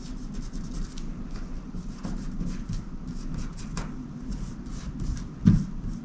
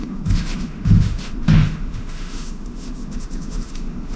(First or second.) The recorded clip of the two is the first